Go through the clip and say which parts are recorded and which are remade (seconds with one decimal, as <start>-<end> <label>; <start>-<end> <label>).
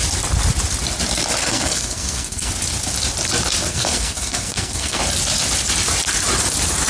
0.0-1.4 recorded; 1.4-2.5 remade; 2.5-3.7 recorded; 3.7-5.0 remade; 5.0-6.9 recorded